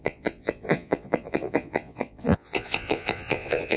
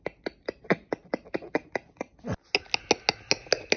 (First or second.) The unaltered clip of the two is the second